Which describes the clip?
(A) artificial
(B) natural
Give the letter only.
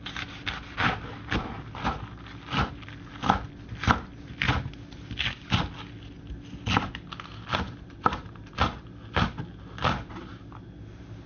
B